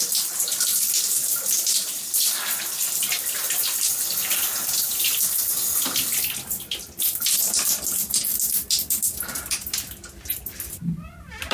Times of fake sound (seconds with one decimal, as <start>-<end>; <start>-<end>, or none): none